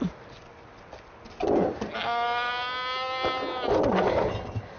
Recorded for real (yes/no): yes